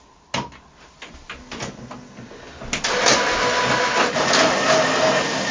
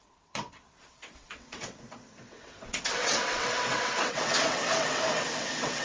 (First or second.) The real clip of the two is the first